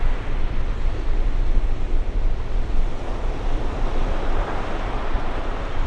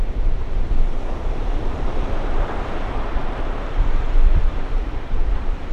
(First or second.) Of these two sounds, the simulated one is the second